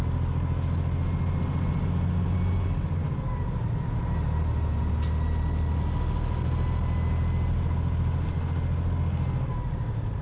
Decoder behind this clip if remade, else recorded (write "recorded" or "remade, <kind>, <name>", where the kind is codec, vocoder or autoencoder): recorded